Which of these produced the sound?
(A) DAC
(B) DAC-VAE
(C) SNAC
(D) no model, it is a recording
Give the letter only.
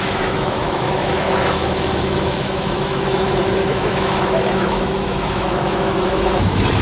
B